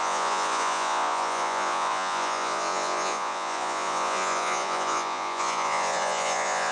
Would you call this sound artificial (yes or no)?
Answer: yes